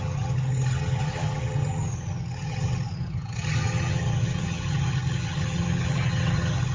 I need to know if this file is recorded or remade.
remade